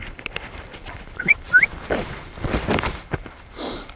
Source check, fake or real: fake